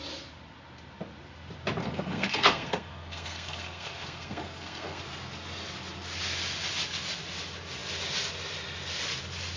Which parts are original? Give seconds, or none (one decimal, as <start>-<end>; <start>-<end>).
0.0-1.8; 5.0-9.6